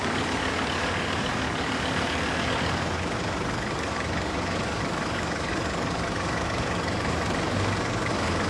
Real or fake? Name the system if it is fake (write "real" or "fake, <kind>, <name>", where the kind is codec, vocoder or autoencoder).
fake, codec, DAC